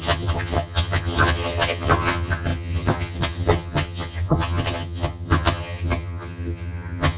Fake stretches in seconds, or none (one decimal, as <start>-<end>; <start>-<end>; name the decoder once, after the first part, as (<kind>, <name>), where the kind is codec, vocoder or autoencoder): 0.0-7.2 (vocoder, HiFi-GAN)